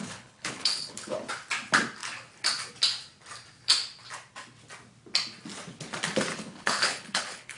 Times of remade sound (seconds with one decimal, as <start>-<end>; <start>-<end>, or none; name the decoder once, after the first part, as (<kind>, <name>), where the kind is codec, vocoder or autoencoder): 0.0-1.3 (codec, HILCodec); 6.3-7.6